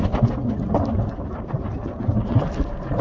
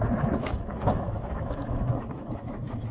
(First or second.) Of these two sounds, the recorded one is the first